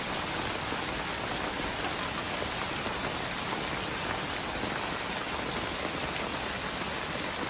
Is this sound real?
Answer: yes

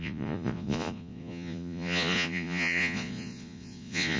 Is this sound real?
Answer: no